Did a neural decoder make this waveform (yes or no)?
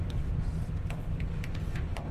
no